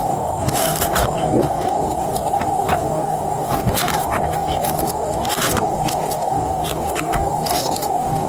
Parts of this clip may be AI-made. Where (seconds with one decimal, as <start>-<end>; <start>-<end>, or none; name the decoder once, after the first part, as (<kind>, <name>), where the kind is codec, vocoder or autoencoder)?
0.0-8.3 (codec, DAC)